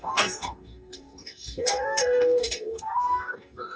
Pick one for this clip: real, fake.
fake